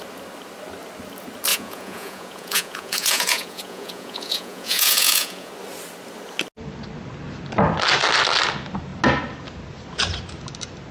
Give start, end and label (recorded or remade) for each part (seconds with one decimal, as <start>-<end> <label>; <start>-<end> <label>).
0.0-1.5 recorded; 1.5-5.5 remade; 5.5-10.9 recorded